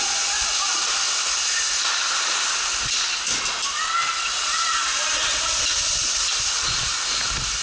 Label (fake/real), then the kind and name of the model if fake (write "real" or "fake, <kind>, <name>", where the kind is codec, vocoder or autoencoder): real